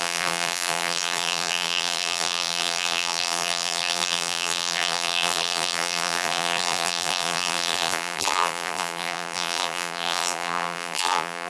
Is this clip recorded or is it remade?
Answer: remade